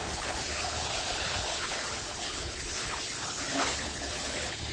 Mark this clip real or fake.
fake